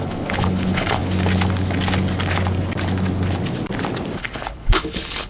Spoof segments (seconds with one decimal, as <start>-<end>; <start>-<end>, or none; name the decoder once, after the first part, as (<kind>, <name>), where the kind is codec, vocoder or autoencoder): 0.0-1.0 (codec, HILCodec); 4.2-5.3